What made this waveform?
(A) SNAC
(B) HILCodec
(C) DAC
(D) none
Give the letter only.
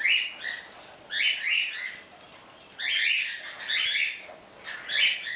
D